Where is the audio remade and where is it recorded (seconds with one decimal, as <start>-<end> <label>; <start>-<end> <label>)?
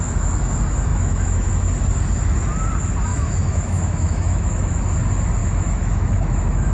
0.0-0.9 recorded; 0.9-1.5 remade; 1.5-3.1 recorded; 3.1-4.8 remade; 4.8-5.4 recorded; 5.4-6.7 remade